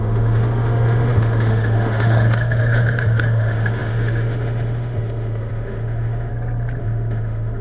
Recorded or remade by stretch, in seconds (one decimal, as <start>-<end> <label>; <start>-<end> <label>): 0.0-6.3 remade; 6.3-6.8 recorded; 6.8-7.6 remade